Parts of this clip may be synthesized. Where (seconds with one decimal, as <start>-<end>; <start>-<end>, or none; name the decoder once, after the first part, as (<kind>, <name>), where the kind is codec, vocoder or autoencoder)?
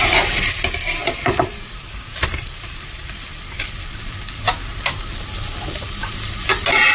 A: 1.0-5.1 (vocoder, BigVGAN v2)